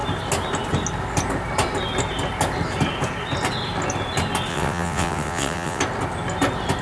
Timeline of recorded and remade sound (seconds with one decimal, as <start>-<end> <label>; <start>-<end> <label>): 0.0-4.5 recorded; 4.5-5.8 remade; 5.8-6.8 recorded